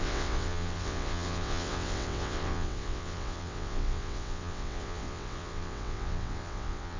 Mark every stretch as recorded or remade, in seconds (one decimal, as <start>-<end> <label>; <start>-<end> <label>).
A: 0.0-7.0 remade